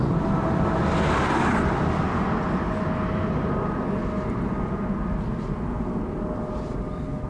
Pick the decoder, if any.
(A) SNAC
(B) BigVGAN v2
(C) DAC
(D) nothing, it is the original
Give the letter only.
D